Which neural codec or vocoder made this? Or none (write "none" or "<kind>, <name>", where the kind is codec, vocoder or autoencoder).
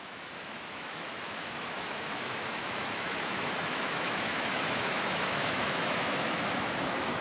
autoencoder, DAC-VAE